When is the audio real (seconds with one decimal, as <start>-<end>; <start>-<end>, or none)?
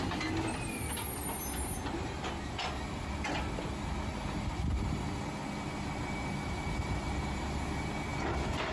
0.0-8.7